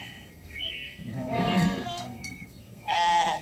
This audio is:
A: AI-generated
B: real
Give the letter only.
A